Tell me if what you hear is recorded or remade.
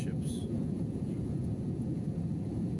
remade